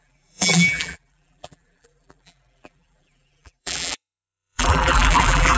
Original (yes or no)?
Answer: no